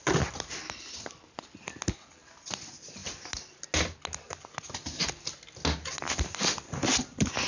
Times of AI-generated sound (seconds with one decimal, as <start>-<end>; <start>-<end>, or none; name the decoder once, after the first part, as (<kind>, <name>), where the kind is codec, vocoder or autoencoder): none